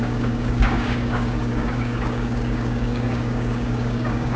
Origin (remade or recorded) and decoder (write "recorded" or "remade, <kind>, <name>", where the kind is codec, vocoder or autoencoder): remade, codec, DAC